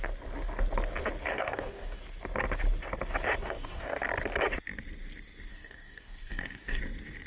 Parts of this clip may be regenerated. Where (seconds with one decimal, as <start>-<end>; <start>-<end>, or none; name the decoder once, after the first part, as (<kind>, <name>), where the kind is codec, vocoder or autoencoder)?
1.3-2.0 (codec, DAC); 3.4-4.0; 5.5-6.8